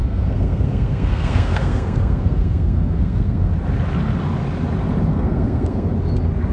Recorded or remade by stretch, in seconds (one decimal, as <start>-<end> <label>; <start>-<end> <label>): 0.0-3.5 remade; 3.5-5.1 recorded; 5.1-5.9 remade; 5.9-6.5 recorded